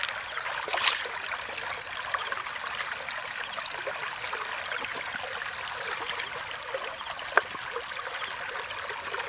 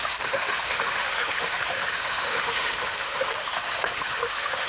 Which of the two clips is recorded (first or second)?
first